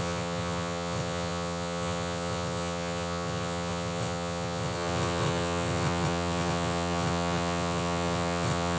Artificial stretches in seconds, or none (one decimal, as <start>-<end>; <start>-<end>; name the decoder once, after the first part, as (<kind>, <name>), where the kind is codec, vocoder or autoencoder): 0.0-8.8 (vocoder, WaveNeXt)